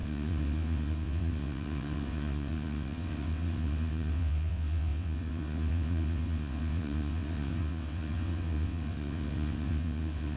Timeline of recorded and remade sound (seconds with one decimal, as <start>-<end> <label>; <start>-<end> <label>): 0.0-10.4 remade